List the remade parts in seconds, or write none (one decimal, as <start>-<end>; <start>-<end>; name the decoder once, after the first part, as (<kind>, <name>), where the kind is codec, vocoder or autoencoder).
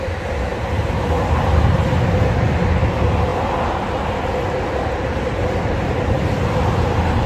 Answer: none